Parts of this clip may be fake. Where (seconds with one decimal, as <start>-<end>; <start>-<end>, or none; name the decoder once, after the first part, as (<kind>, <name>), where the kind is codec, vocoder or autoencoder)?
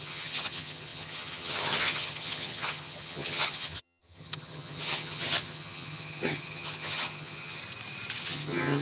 0.0-7.6 (vocoder, HiFi-GAN); 8.2-8.8